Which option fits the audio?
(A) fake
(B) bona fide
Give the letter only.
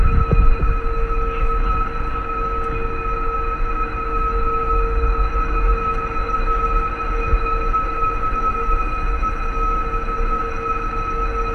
A